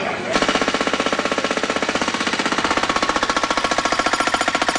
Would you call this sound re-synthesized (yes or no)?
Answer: no